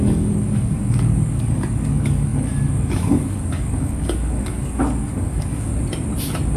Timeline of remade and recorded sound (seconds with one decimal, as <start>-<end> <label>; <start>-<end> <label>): 0.0-5.7 remade; 5.7-6.6 recorded